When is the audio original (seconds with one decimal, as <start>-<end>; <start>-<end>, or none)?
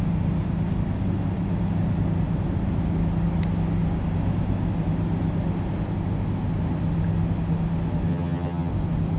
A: 0.0-8.1; 8.7-9.2